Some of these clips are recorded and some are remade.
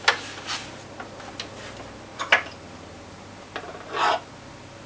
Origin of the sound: recorded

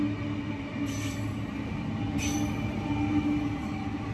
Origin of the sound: recorded